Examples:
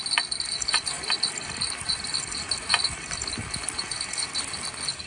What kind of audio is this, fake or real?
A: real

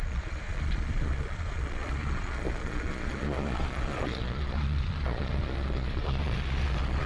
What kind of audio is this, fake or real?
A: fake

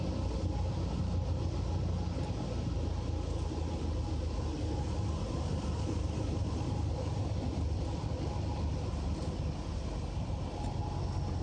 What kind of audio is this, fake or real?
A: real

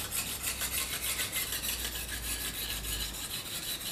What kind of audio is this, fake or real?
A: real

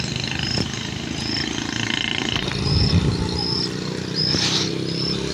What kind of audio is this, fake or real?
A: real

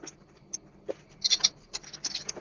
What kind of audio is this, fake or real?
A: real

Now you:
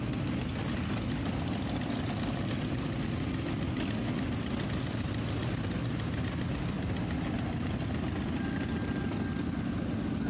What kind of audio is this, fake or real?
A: real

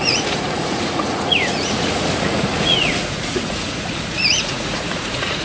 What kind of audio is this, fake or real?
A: fake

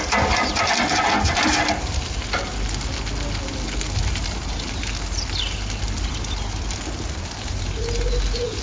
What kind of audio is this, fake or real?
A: real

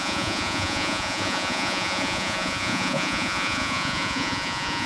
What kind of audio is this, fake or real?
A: fake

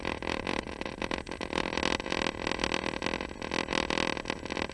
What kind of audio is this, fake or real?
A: real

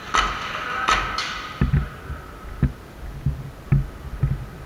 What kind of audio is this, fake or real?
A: real